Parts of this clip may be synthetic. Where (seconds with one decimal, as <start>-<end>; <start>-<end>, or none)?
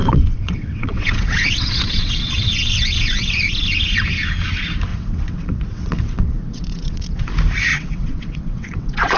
0.0-3.4; 4.9-7.3; 7.7-9.2